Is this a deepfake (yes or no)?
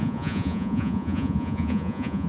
yes